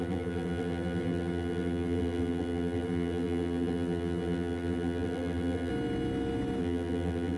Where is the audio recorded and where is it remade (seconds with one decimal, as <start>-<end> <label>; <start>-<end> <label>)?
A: 0.0-5.7 remade; 5.7-6.6 recorded; 6.6-7.4 remade